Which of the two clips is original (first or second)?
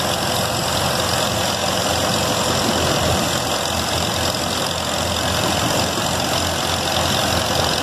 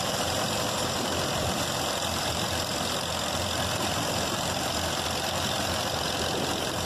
first